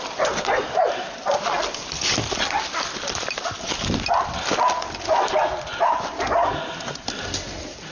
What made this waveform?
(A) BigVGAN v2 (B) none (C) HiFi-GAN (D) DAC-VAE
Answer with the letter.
B